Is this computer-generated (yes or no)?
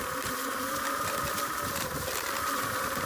yes